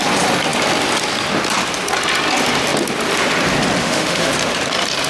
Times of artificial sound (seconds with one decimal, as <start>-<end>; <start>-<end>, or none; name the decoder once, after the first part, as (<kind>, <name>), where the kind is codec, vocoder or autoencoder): 3.8-4.3 (autoencoder, DAC-VAE)